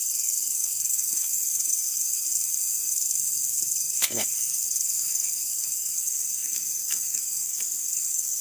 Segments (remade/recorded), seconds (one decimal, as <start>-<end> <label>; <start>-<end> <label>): 0.0-8.4 remade